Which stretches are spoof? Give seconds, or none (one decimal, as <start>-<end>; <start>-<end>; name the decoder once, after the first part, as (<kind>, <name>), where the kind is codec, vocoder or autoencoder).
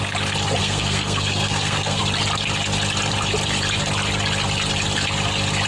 0.6-2.0 (codec, SNAC)